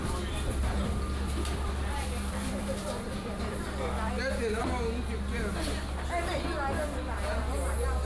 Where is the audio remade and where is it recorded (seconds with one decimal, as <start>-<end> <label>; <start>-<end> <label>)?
0.0-3.9 remade; 3.9-8.1 recorded